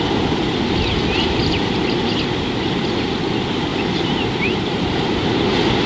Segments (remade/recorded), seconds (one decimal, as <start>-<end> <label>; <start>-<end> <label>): 0.0-3.7 recorded; 3.7-5.4 remade; 5.4-5.9 recorded